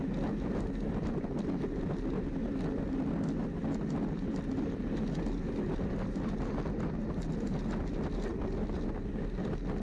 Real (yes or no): yes